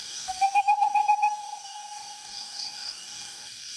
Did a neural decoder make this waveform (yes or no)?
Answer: yes